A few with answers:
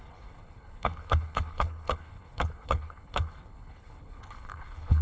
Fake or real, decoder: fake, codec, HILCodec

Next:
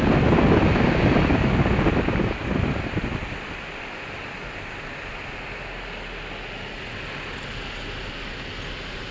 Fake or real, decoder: real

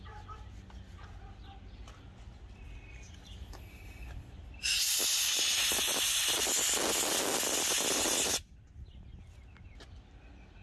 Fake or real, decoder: real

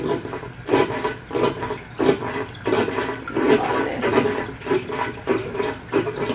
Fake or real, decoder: real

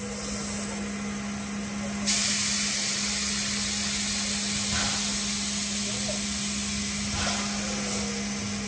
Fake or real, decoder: real